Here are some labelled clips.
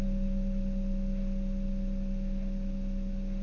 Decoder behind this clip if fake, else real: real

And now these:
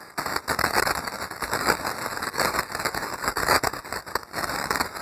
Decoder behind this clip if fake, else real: fake, codec, DAC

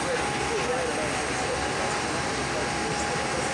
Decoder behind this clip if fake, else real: real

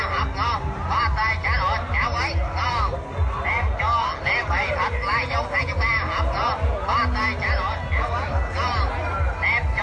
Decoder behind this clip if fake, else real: real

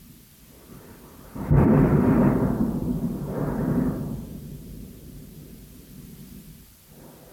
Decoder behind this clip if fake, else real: fake, vocoder, BigVGAN v2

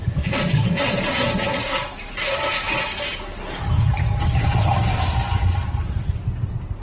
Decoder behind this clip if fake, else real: fake, vocoder, BigVGAN v2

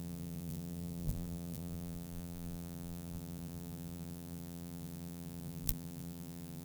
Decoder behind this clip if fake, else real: fake, vocoder, BigVGAN v2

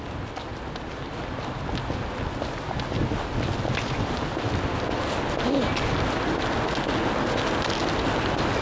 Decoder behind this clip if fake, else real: real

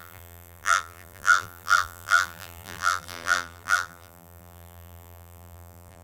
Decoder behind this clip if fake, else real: fake, vocoder, BigVGAN v2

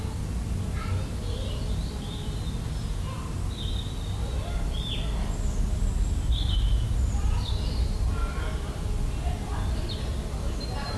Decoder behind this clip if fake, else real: real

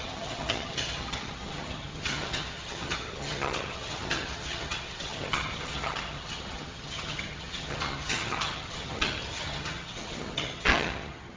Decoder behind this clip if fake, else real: fake, vocoder, HiFi-GAN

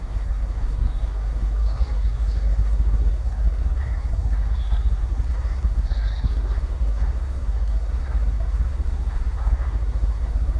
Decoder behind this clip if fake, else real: fake, codec, SNAC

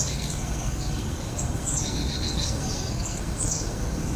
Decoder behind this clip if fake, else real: fake, codec, SNAC